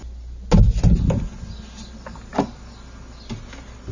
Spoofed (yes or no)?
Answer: no